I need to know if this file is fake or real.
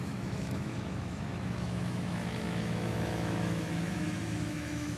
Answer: fake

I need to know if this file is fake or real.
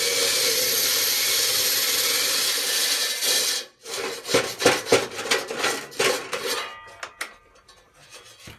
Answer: real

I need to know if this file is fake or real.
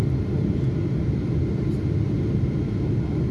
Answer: real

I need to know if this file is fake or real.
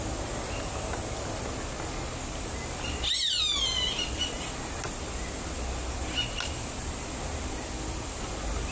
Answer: real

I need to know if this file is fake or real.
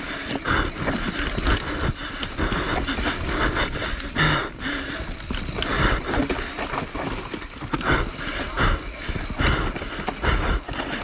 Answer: real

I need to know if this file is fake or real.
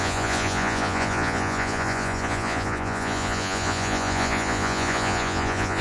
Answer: fake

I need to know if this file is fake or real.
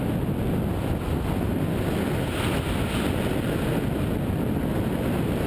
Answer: real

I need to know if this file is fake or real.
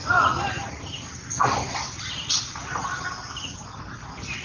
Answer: real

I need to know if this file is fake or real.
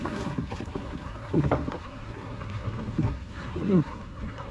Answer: fake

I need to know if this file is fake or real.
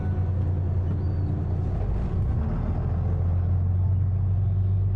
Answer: real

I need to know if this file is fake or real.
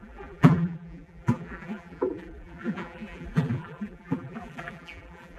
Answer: fake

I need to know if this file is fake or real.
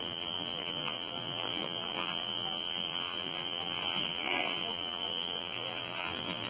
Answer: fake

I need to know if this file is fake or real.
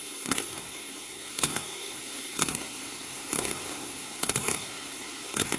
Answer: fake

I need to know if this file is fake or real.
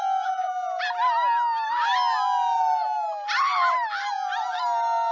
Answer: real